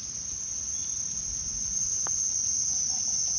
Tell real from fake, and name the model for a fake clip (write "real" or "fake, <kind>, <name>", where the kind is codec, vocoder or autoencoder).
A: real